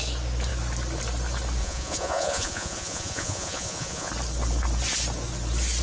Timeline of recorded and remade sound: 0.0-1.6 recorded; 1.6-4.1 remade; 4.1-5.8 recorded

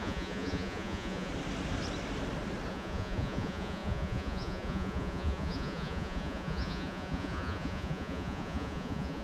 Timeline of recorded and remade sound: 0.0-1.3 remade; 1.3-2.7 recorded; 2.7-9.2 remade

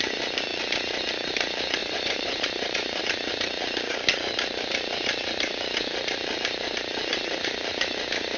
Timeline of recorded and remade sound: 0.0-1.8 recorded; 1.8-3.0 remade; 3.0-8.4 recorded

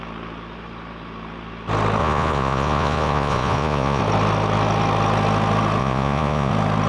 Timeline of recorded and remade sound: 0.0-2.0 recorded; 2.0-4.0 remade; 4.0-5.8 recorded; 5.8-6.5 remade; 6.5-6.9 recorded

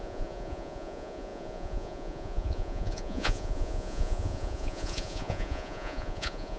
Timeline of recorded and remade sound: 0.0-6.6 remade